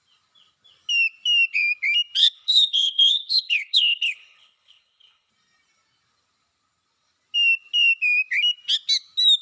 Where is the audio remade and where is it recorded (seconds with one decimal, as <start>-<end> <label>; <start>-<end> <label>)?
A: 0.0-2.2 recorded; 2.2-5.3 remade; 5.3-9.4 recorded